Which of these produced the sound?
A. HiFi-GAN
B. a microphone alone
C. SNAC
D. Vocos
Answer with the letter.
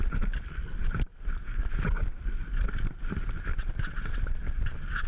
B